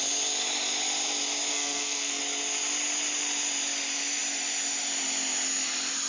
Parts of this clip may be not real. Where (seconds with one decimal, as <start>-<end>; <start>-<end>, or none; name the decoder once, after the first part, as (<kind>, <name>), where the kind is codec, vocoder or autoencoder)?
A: 1.5-2.2 (codec, SNAC)